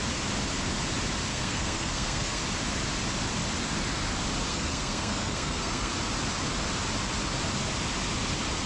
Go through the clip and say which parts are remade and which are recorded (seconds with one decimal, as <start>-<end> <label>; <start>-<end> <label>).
0.0-1.3 recorded; 1.3-2.4 remade; 2.4-4.5 recorded; 4.5-5.9 remade; 5.9-8.7 recorded

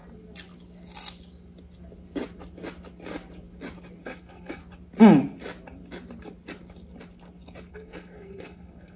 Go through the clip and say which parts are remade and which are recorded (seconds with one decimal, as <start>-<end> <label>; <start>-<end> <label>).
0.0-4.0 recorded; 4.0-4.6 remade; 4.6-7.7 recorded; 7.7-9.0 remade